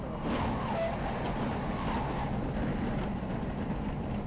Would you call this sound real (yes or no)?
yes